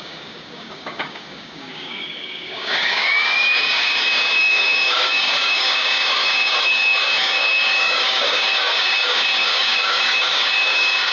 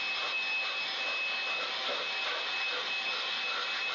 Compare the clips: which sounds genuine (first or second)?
second